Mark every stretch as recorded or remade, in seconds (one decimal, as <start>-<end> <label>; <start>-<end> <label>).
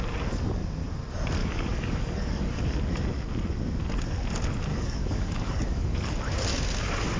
0.0-1.4 recorded; 1.4-2.6 remade; 2.6-4.7 recorded; 4.7-6.1 remade; 6.1-7.2 recorded